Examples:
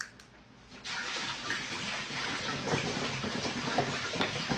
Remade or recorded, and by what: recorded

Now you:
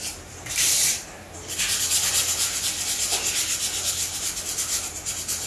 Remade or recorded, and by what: recorded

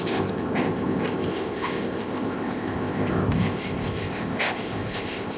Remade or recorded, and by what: remade, codec, ZipCodec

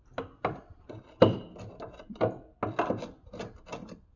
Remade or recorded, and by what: recorded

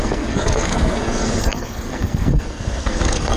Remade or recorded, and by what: remade, codec, SNAC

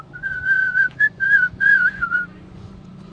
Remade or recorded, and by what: remade, vocoder, Vocos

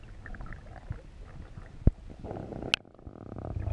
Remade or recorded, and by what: recorded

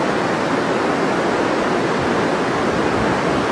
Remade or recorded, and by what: recorded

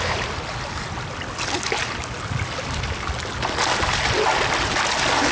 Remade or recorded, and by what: recorded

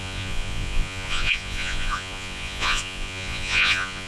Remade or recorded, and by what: remade, vocoder, Vocos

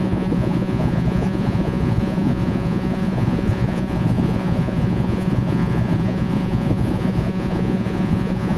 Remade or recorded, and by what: remade, vocoder, Vocos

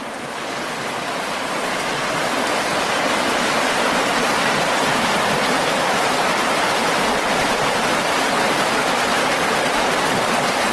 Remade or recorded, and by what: recorded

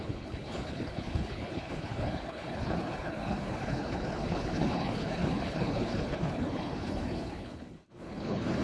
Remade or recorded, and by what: remade, codec, HILCodec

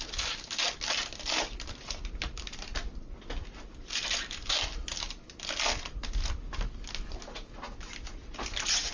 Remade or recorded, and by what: recorded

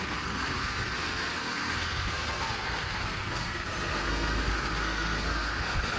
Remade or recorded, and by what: remade, codec, SNAC